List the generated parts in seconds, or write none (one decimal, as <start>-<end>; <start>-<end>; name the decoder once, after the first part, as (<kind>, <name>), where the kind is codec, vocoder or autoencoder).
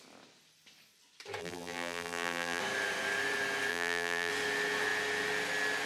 1.4-2.6 (vocoder, BigVGAN v2); 3.7-4.3